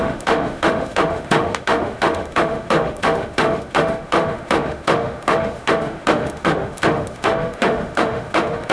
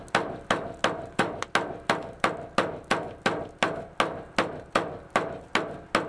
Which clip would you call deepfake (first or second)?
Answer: first